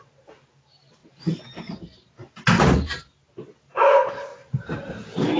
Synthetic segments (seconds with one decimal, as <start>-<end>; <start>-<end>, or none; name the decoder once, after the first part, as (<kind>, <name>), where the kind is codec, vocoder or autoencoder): 1.0-2.1 (vocoder, BigVGAN v2); 4.3-4.9